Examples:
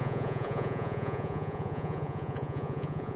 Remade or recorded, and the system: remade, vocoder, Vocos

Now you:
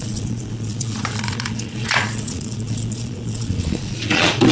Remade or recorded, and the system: remade, vocoder, Vocos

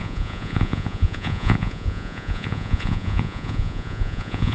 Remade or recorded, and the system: remade, vocoder, Vocos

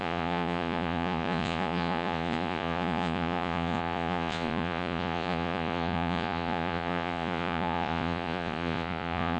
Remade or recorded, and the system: remade, vocoder, Vocos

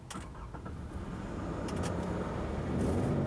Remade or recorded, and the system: recorded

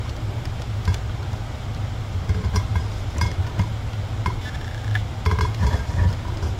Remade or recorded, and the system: recorded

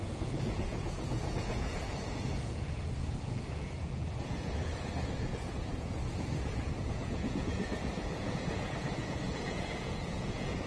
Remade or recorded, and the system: remade, vocoder, Vocos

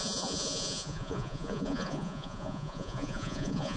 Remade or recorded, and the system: remade, vocoder, Vocos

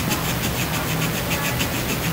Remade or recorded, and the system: recorded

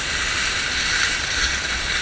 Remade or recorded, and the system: recorded